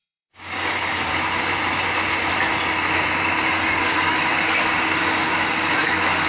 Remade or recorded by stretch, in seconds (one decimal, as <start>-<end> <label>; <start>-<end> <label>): 0.0-1.1 remade; 1.1-3.5 recorded; 3.5-6.3 remade